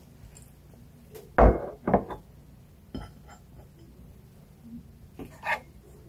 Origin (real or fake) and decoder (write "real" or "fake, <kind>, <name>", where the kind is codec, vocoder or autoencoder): real